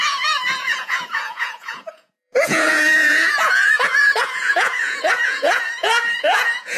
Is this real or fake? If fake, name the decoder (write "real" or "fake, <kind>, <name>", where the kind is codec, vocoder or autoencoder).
fake, vocoder, Vocos